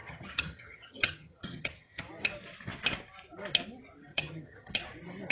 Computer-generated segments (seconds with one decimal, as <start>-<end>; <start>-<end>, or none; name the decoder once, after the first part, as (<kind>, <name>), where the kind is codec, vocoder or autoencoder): 0.0-2.0 (vocoder, HiFi-GAN); 4.1-4.7